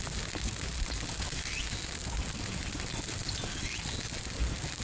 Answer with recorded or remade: recorded